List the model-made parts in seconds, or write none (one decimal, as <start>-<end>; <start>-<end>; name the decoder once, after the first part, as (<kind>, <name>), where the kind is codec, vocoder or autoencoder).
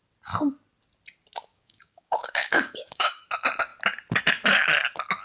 1.5-3.3 (codec, DAC)